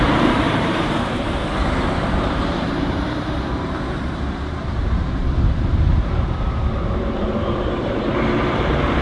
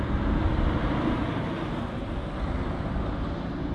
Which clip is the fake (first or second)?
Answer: first